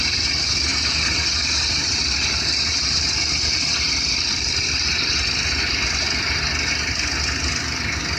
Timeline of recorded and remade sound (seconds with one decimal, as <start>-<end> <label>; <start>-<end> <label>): 0.0-0.7 recorded; 0.7-4.7 remade; 4.7-8.2 recorded